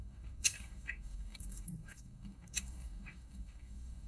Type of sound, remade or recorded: remade